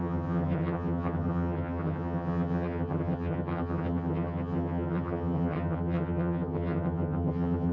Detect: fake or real fake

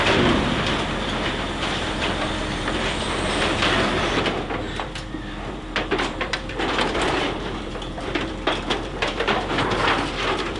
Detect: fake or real fake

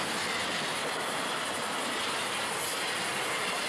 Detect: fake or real real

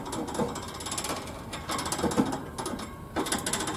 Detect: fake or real real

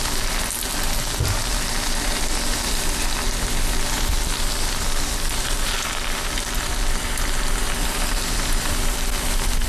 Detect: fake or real real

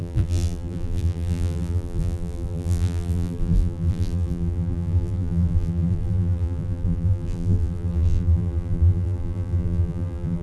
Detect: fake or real fake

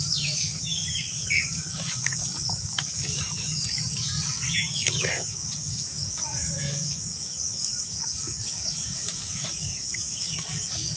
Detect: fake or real fake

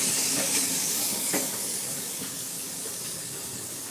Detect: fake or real fake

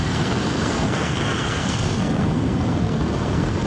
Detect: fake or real fake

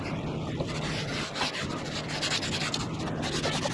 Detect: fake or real real